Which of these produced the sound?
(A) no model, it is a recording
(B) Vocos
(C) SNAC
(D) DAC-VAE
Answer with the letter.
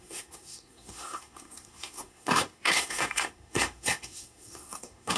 C